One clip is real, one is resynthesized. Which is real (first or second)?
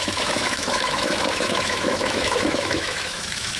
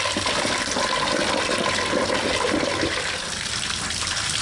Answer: second